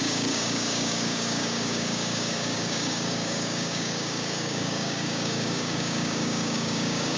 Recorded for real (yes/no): no